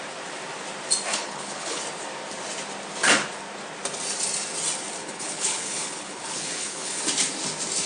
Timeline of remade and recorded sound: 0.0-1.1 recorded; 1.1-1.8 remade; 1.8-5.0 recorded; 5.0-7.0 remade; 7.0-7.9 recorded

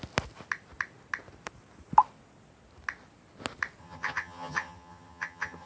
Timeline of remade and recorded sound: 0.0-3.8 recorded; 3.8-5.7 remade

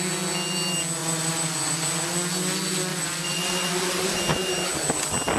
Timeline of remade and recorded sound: 0.0-1.0 recorded; 1.0-1.7 remade; 1.7-2.9 recorded; 2.9-3.7 remade; 3.7-5.4 recorded